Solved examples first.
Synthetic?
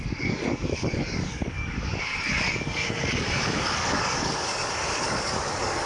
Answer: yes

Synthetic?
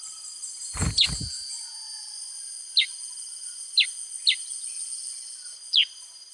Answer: no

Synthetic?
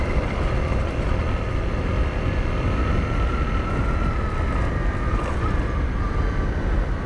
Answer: no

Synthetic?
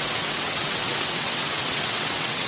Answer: yes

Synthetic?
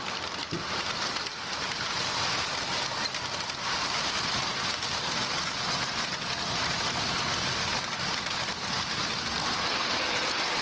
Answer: no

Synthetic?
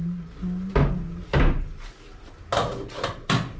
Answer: no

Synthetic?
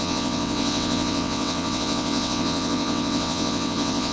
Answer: yes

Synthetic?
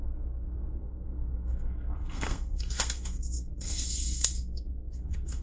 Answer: yes